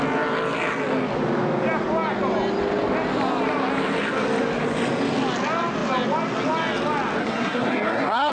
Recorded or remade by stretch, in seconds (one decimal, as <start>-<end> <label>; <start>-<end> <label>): 0.0-7.2 recorded; 7.2-8.3 remade